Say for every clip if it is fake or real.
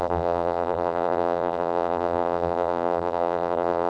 fake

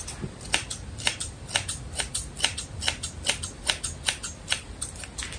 real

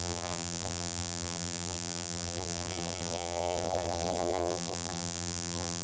fake